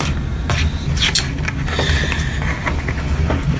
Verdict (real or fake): real